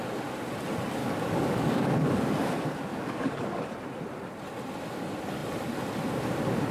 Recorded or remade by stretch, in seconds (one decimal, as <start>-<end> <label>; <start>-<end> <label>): 0.0-1.0 recorded; 1.0-2.5 remade; 2.5-2.9 recorded; 2.9-3.6 remade; 3.6-6.7 recorded